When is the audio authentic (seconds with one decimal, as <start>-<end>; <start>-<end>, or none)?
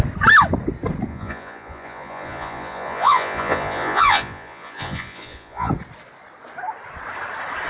0.0-1.1; 5.7-7.7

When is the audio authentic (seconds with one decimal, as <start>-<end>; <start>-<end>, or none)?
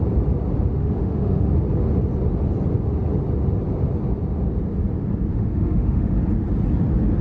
0.0-0.8; 1.5-5.3; 6.2-7.2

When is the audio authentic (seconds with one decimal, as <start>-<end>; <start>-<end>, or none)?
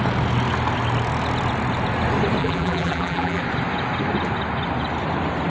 0.0-2.4; 3.4-5.5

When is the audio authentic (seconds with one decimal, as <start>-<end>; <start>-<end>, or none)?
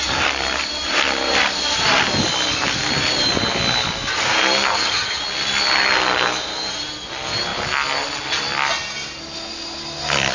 0.0-4.7; 5.2-10.3